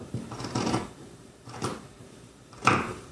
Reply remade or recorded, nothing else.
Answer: remade